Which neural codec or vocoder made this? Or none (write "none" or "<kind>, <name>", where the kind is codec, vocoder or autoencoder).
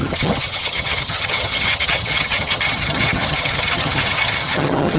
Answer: vocoder, HiFi-GAN